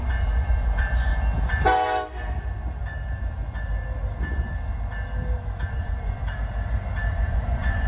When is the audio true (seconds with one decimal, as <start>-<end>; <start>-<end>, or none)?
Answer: 1.1-5.7; 6.2-7.1